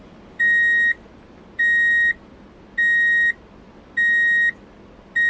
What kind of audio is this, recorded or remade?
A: recorded